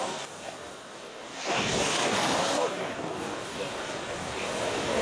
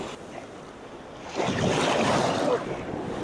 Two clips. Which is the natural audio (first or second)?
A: second